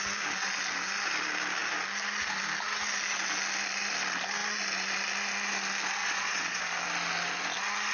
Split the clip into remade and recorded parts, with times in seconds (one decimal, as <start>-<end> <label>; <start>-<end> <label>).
0.0-6.0 recorded; 6.0-6.6 remade; 6.6-7.9 recorded